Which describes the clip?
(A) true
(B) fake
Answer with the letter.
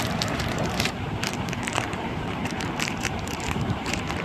B